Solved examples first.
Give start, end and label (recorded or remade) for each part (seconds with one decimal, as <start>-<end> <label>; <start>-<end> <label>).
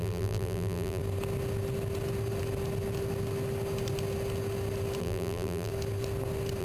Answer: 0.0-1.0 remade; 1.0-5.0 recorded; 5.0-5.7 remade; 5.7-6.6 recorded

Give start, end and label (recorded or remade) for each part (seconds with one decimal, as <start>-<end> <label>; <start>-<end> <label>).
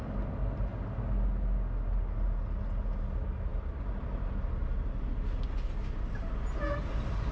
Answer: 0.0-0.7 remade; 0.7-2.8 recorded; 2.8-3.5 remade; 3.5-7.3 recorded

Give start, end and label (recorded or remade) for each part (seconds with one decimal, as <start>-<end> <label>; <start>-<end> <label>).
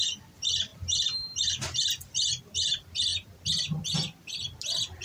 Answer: 0.0-5.0 recorded